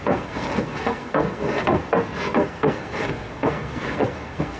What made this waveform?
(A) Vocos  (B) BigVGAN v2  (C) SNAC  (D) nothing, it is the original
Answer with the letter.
C